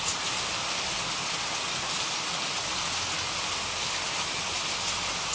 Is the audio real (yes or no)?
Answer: yes